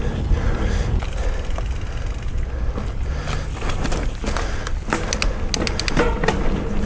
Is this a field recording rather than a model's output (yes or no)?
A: yes